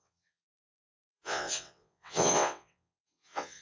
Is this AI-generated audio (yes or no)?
yes